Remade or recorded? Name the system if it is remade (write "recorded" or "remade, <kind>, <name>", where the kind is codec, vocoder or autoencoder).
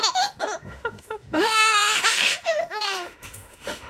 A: remade, autoencoder, DAC-VAE